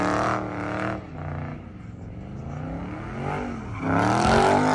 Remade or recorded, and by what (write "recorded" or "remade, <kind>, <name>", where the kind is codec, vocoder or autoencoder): recorded